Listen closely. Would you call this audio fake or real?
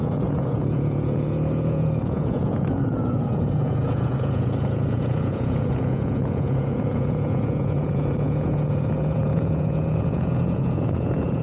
fake